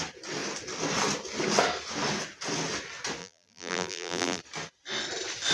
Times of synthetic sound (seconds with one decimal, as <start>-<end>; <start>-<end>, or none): 3.2-4.4